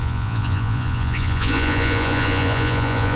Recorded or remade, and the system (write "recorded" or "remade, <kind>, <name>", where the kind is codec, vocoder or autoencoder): remade, vocoder, Vocos